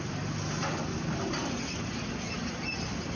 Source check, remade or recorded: recorded